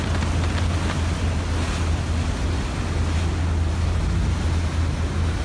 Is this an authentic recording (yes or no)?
yes